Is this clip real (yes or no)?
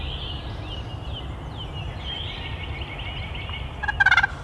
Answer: yes